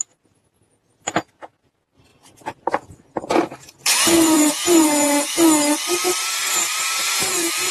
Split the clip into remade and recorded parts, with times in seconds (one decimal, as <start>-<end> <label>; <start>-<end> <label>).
0.0-5.3 remade; 5.3-6.5 recorded; 6.5-7.7 remade